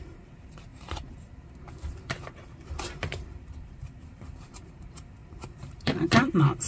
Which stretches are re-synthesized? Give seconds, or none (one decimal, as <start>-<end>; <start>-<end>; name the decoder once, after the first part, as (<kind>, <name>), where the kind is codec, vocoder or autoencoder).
0.0-6.7 (vocoder, BigVGAN v2)